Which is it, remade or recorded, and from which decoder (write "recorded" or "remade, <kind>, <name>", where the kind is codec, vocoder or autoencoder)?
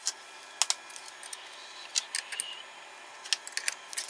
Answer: recorded